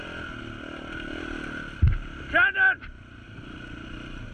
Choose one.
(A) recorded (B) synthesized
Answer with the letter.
A